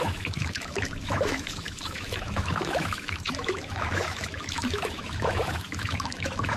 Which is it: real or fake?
fake